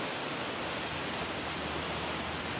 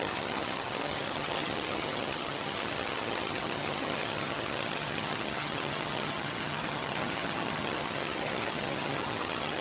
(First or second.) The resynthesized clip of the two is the second